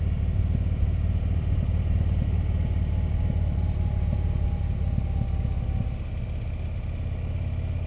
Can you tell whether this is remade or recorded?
recorded